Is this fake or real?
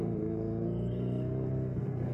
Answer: fake